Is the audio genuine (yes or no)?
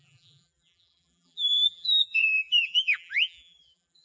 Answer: no